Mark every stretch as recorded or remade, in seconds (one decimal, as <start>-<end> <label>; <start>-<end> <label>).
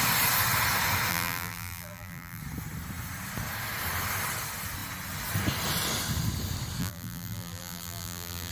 0.0-1.1 recorded; 1.1-2.4 remade; 2.4-6.8 recorded; 6.8-8.5 remade